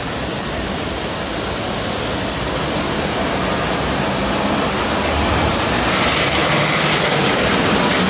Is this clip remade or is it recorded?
recorded